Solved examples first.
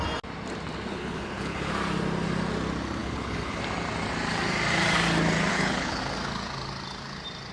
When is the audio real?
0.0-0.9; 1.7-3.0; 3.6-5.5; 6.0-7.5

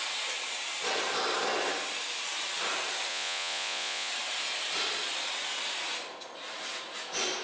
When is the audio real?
0.0-3.1; 4.1-7.4